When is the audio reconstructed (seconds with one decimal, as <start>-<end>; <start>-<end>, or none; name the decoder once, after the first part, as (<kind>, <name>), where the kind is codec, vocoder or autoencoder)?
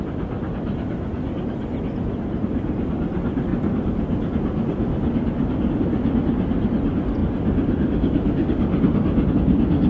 none